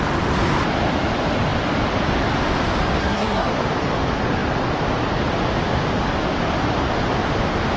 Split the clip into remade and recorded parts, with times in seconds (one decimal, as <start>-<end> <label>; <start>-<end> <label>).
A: 0.0-3.0 recorded; 3.0-3.5 remade; 3.5-7.8 recorded